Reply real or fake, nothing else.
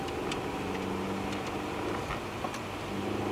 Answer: real